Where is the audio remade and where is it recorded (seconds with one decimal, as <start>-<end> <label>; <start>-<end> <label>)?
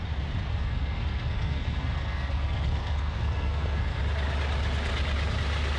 0.0-0.5 recorded; 0.5-4.0 remade; 4.0-5.8 recorded